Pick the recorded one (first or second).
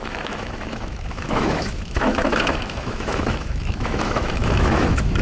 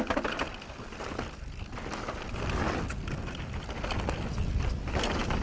second